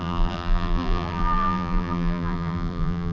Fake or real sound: fake